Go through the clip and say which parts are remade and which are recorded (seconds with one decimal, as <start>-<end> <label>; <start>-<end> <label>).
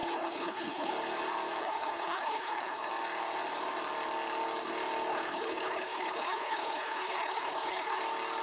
0.0-0.9 remade; 0.9-1.6 recorded; 1.6-2.9 remade; 2.9-5.1 recorded; 5.1-8.0 remade; 8.0-8.4 recorded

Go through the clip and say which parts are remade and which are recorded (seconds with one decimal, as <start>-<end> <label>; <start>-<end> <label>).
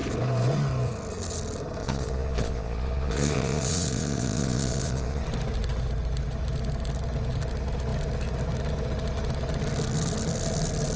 0.0-1.8 recorded; 1.8-5.2 remade; 5.2-11.0 recorded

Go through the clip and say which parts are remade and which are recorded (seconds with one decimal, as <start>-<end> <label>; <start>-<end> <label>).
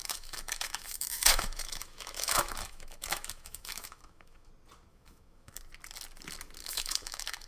0.0-4.5 remade; 4.5-4.9 recorded; 4.9-5.6 remade; 5.6-6.6 recorded; 6.6-7.5 remade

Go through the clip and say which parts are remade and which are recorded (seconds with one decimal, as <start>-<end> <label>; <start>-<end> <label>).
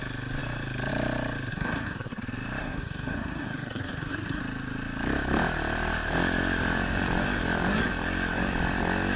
0.0-1.5 recorded; 1.5-2.2 remade; 2.2-2.6 recorded; 2.6-4.4 remade; 4.4-9.2 recorded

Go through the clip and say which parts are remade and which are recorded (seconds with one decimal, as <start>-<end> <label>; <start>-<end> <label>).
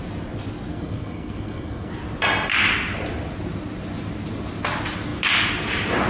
0.0-0.7 recorded; 0.7-1.9 remade; 1.9-6.1 recorded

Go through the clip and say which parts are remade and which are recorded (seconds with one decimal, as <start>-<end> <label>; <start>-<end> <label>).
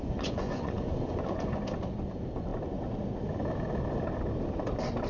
0.0-1.6 remade; 1.6-5.1 recorded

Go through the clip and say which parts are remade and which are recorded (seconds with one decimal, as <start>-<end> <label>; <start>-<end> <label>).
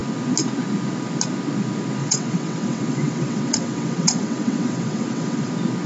0.0-2.0 recorded; 2.0-5.5 remade; 5.5-5.9 recorded